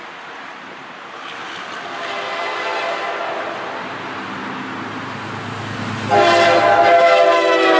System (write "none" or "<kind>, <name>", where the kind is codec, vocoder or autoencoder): none